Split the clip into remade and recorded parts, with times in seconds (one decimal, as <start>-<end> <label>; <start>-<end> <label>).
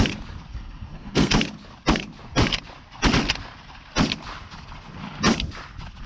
0.0-0.5 recorded; 0.5-1.3 remade; 1.3-6.1 recorded